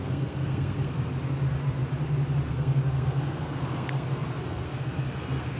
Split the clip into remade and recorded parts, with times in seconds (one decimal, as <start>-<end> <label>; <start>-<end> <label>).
0.0-1.1 remade; 1.1-2.5 recorded; 2.5-5.6 remade